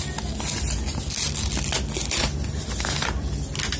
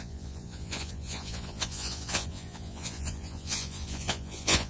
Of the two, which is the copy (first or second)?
second